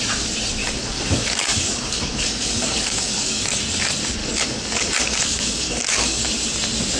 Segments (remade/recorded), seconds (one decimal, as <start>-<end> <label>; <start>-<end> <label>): 0.0-0.6 recorded; 0.6-3.6 remade; 3.6-4.2 recorded; 4.2-6.3 remade; 6.3-7.0 recorded